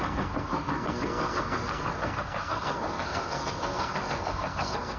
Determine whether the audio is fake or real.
fake